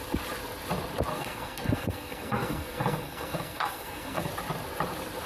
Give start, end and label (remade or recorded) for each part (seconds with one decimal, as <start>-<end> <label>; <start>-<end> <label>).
0.0-1.1 recorded; 1.1-4.3 remade; 4.3-5.3 recorded